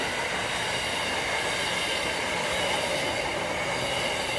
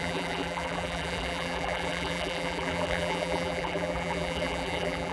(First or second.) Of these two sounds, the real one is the first